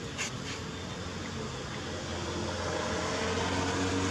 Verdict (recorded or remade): recorded